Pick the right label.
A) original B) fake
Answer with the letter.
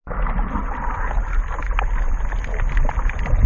A